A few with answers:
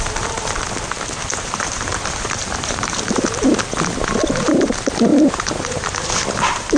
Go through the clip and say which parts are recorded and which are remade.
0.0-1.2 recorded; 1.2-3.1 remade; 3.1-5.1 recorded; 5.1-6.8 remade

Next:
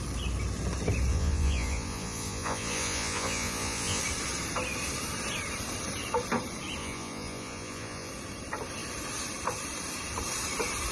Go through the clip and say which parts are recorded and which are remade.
0.0-1.1 recorded; 1.1-4.0 remade; 4.0-6.8 recorded; 6.8-8.1 remade; 8.1-10.9 recorded

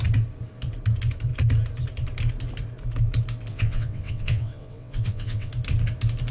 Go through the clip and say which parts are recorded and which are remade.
0.0-3.5 recorded; 3.5-5.5 remade; 5.5-6.3 recorded

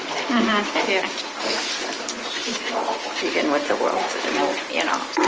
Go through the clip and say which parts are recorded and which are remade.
0.0-5.3 recorded